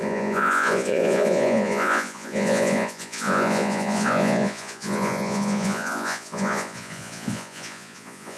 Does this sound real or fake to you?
fake